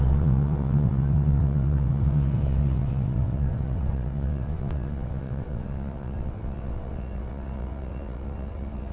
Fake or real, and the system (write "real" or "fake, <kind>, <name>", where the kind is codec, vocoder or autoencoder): fake, vocoder, WaveNeXt